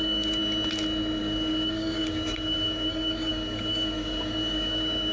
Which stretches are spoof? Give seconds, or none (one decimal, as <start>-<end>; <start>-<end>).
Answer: 0.0-0.4; 1.2-5.1

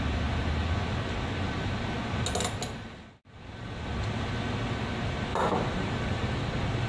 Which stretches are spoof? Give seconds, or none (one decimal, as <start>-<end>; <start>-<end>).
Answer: 5.3-6.4

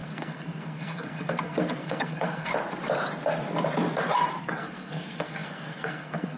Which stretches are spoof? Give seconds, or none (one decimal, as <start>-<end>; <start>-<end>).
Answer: 0.0-2.5; 4.4-6.4

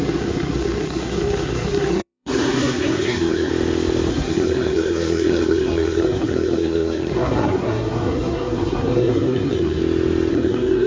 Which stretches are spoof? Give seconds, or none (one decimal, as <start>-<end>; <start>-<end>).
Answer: 0.0-3.5; 4.1-9.8; 10.3-10.9

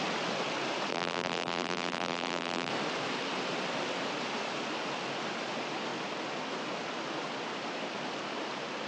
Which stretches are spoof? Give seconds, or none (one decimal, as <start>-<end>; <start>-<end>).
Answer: 0.9-2.7